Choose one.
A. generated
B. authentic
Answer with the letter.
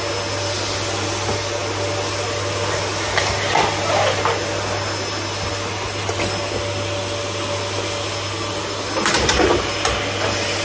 B